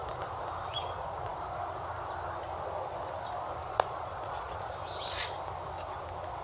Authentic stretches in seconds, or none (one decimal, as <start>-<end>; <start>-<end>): 0.0-3.6; 4.7-6.4